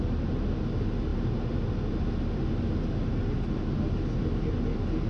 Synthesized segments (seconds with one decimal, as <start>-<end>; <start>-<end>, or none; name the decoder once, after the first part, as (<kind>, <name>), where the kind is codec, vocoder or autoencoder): none